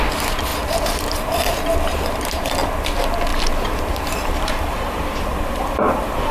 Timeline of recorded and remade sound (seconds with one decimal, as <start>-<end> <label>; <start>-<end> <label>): 0.0-3.3 recorded; 3.3-6.3 remade